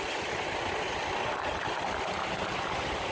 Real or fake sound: real